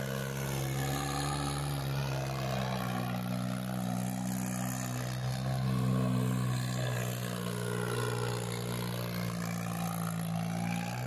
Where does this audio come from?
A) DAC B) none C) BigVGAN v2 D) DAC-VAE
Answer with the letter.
B